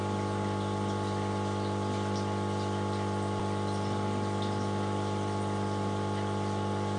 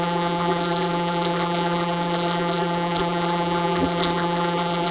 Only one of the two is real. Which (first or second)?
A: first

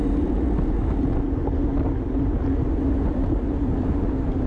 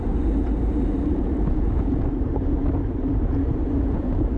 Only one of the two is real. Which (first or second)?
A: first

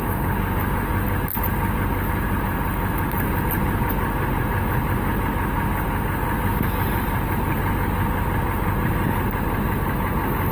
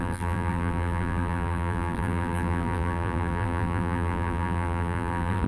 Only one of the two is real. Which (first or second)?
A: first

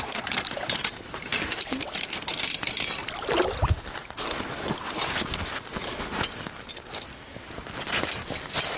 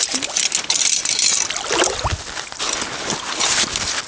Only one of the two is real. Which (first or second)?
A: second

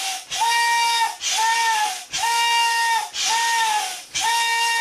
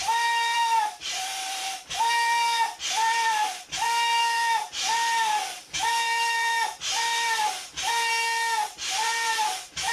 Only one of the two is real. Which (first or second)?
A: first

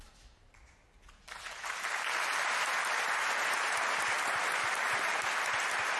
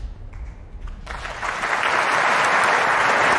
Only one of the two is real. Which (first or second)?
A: second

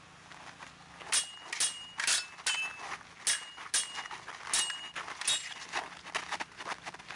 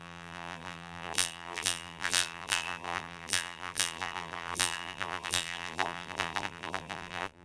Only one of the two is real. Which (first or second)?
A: first